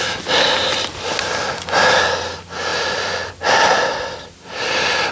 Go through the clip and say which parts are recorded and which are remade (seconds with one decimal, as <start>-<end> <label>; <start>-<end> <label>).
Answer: 0.0-2.7 recorded; 2.7-3.3 remade; 3.3-5.1 recorded